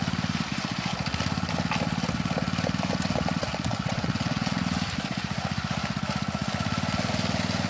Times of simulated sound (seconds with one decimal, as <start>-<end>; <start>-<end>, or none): 3.7-4.6